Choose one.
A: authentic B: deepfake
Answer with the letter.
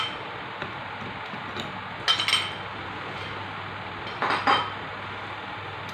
A